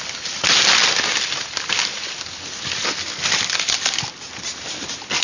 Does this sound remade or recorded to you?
recorded